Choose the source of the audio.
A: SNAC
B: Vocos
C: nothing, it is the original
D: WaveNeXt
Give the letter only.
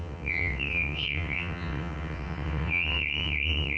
D